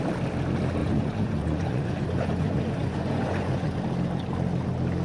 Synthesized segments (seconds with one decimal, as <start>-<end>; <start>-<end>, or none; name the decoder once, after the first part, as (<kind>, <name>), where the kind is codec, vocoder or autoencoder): 0.8-3.8 (vocoder, Vocos)